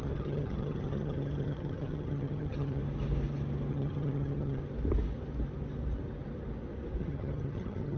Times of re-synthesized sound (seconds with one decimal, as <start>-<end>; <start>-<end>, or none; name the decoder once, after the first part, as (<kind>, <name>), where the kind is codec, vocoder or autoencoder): 0.0-2.8 (vocoder, HiFi-GAN); 3.7-4.6; 7.0-8.0